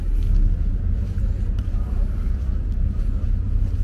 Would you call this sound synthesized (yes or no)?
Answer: no